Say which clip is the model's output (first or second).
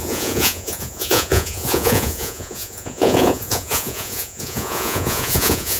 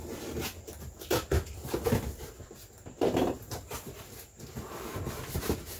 first